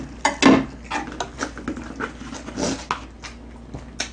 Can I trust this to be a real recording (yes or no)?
yes